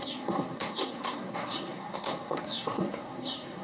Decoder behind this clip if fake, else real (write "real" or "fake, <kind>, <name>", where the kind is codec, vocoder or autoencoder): fake, codec, SNAC